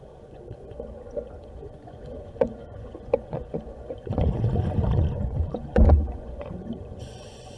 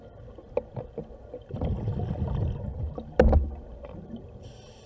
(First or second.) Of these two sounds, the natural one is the second